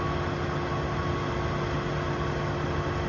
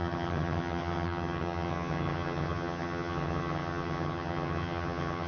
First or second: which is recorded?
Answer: first